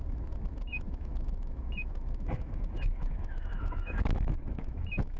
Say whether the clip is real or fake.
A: fake